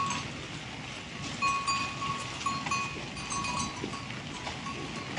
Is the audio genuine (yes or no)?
yes